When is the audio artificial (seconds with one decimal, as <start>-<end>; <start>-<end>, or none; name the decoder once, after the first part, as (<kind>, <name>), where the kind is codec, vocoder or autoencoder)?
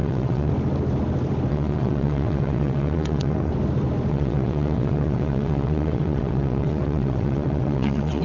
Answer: 0.0-0.5 (vocoder, WaveNeXt); 1.5-3.5; 4.1-8.2